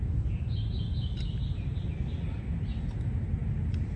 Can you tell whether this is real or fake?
real